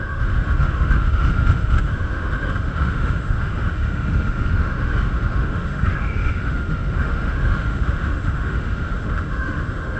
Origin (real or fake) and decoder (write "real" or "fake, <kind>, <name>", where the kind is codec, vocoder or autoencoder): fake, autoencoder, DAC-VAE